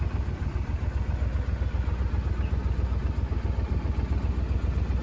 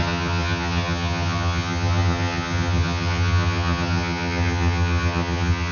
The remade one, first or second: second